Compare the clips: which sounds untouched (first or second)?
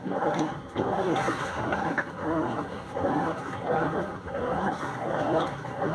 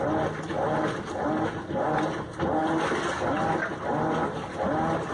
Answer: second